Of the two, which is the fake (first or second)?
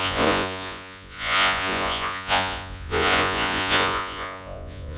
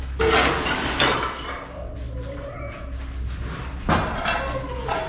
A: first